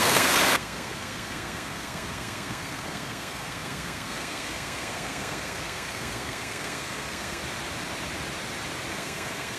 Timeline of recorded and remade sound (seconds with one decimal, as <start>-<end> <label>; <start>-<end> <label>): 0.0-7.4 remade; 7.4-8.9 recorded; 8.9-9.6 remade